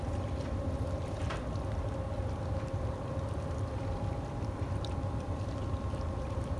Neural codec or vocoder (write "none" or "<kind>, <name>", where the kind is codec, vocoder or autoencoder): vocoder, BigVGAN v2